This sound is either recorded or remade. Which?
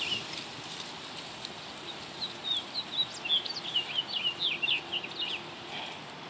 recorded